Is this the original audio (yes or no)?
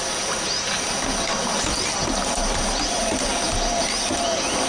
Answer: yes